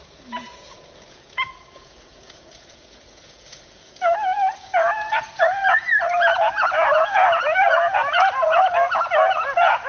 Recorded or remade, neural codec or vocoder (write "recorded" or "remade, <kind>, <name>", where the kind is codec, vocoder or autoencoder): remade, vocoder, Vocos